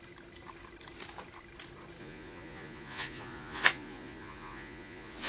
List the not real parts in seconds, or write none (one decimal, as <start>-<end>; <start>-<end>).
2.0-5.3